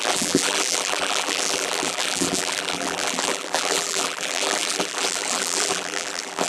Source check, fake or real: fake